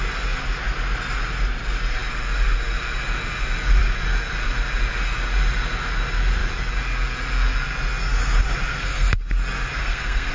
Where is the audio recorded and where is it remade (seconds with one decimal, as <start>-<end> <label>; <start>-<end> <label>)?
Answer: 0.0-8.7 recorded; 8.7-9.2 remade; 9.2-9.8 recorded; 9.8-10.3 remade